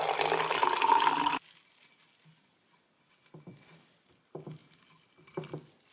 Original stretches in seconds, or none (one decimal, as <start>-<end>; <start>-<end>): 0.0-5.9